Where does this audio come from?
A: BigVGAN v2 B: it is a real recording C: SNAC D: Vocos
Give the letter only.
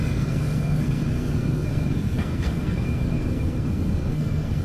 C